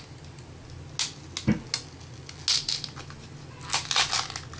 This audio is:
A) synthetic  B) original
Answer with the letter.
B